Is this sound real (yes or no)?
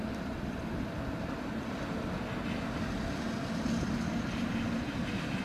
yes